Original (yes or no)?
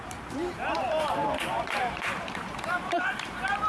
no